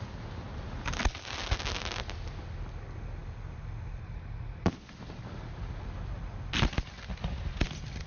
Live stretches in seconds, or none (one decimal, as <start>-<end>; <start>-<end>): 0.0-8.1